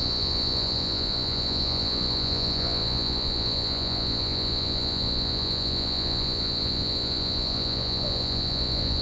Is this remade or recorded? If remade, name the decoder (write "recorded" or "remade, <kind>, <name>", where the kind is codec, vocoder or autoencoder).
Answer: remade, vocoder, Vocos